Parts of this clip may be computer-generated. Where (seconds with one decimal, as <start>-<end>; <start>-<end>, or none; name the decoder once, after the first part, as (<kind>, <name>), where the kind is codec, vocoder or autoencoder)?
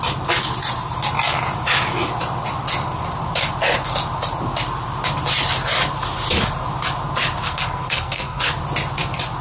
7.4-8.5 (codec, SNAC)